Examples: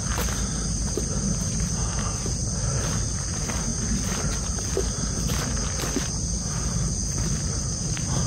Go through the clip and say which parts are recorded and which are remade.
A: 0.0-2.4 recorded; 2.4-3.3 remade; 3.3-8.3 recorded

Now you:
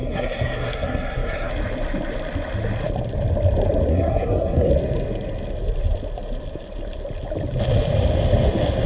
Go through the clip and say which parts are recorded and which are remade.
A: 0.0-1.5 remade; 1.5-3.9 recorded; 3.9-4.7 remade; 4.7-8.9 recorded

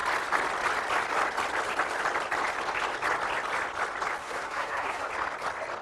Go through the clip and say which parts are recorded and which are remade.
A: 0.0-4.2 recorded; 4.2-5.1 remade; 5.1-5.8 recorded

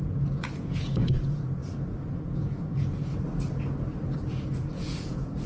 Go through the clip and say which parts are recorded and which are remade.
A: 0.0-1.6 remade; 1.6-2.2 recorded; 2.2-3.1 remade; 3.1-4.3 recorded; 4.3-5.5 remade